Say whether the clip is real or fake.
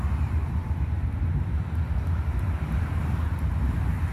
fake